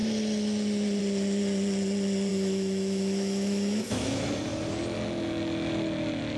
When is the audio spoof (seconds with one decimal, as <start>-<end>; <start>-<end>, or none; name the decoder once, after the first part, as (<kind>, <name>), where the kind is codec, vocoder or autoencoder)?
2.3-4.3 (autoencoder, DAC-VAE)